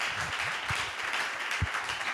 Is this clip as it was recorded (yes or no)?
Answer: yes